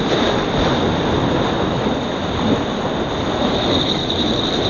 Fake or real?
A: real